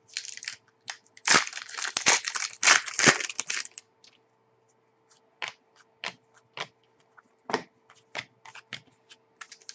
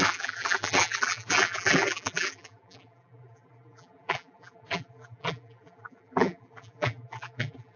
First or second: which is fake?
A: second